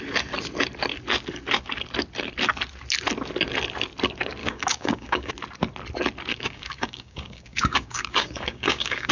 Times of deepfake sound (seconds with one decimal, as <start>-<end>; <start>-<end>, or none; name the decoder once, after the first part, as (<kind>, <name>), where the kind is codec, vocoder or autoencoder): 4.4-5.3 (codec, DAC); 6.3-9.1